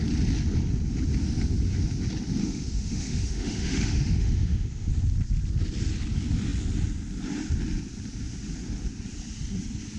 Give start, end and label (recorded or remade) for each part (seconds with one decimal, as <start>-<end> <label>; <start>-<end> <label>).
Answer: 0.0-2.4 recorded; 2.4-4.9 remade; 4.9-10.0 recorded